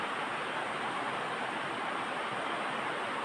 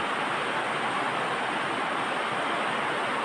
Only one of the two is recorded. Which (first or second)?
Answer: second